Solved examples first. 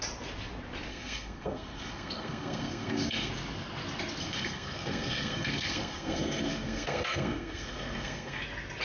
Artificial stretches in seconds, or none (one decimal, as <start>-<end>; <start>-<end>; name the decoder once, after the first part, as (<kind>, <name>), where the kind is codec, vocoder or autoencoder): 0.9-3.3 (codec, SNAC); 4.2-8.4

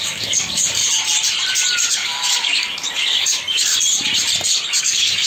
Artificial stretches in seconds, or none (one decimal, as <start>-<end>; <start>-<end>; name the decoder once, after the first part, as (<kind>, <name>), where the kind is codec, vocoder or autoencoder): 0.0-0.8 (codec, DAC); 1.9-3.7; 4.8-5.3

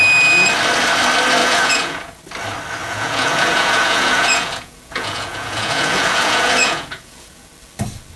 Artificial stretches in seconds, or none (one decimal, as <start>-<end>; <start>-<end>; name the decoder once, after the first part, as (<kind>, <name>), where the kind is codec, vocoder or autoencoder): 1.4-2.2 (vocoder, Vocos); 2.8-7.5

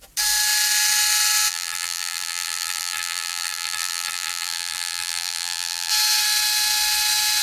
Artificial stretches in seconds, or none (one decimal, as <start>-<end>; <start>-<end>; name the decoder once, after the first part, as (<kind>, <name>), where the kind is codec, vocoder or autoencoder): 1.5-5.9 (vocoder, BigVGAN v2)

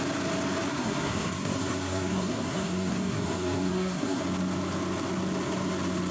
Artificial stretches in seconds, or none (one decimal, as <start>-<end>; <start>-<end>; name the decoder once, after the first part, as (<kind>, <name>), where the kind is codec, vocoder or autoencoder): 0.7-4.2 (codec, SNAC)

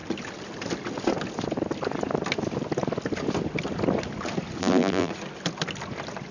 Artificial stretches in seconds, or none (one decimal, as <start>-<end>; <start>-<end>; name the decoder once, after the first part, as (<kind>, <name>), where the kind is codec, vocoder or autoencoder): 4.6-5.1 (vocoder, BigVGAN v2)

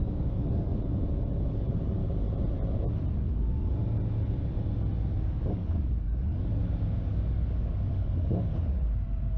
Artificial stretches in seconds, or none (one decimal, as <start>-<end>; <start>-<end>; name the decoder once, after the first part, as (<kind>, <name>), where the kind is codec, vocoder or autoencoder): 0.0-0.7 (codec, DAC); 1.5-2.0; 5.2-6.6; 7.1-8.5